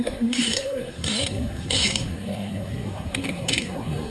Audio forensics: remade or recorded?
remade